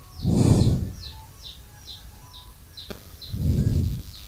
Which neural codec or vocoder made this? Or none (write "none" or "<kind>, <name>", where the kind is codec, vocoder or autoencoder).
none